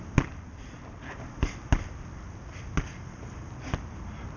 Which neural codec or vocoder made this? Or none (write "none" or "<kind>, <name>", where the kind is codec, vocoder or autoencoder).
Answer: none